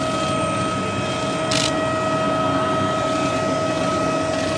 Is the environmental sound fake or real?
real